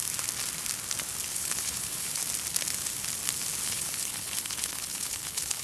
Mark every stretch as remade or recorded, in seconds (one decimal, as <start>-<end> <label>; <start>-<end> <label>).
0.0-1.3 recorded; 1.3-2.2 remade; 2.2-3.6 recorded; 3.6-5.6 remade